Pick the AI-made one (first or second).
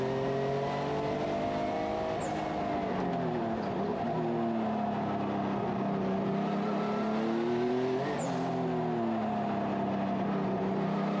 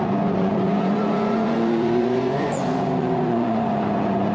second